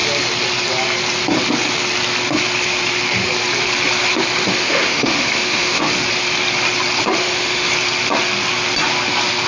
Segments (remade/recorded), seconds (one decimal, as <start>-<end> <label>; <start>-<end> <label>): 0.0-4.5 recorded; 4.5-5.8 remade; 5.8-7.2 recorded; 7.2-7.7 remade; 7.7-9.5 recorded